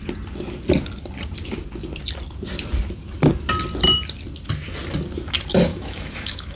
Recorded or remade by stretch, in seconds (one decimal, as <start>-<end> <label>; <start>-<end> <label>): 0.0-5.7 recorded; 5.7-6.6 remade